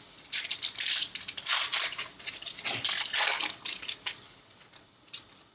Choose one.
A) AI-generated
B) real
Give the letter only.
B